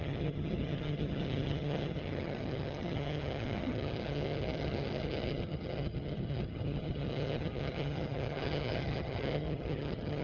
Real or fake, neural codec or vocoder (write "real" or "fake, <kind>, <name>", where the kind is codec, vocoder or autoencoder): fake, vocoder, HiFi-GAN